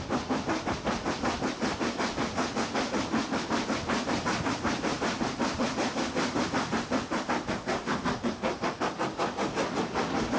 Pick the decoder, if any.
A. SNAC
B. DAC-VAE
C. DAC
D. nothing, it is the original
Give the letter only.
D